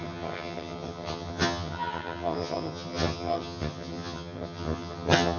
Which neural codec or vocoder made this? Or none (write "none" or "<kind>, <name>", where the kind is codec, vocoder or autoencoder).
vocoder, HiFi-GAN